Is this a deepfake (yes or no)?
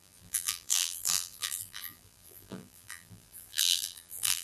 yes